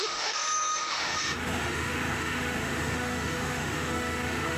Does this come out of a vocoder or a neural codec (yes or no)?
yes